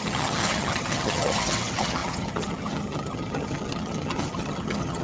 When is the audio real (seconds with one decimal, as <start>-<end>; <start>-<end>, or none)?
none